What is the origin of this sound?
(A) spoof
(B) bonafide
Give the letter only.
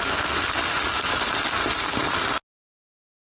B